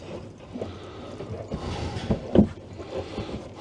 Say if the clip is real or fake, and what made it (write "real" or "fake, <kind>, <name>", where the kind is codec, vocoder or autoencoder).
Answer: real